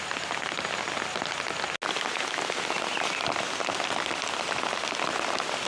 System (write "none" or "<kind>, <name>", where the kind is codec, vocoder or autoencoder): none